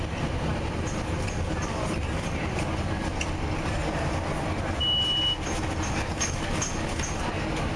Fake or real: real